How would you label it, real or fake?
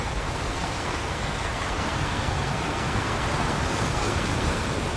fake